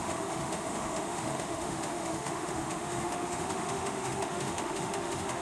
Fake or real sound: fake